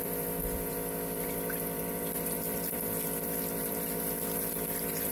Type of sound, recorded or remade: remade